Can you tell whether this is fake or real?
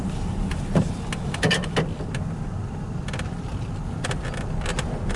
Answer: real